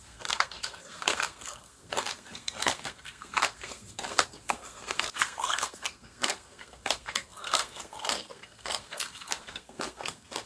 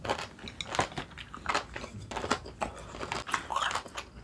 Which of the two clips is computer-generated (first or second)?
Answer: first